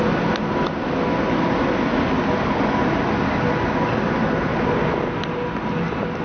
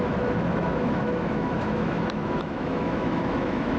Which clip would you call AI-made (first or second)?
second